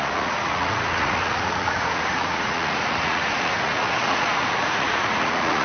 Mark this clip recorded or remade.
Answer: remade